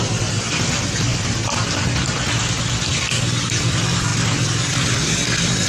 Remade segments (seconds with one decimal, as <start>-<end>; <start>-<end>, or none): none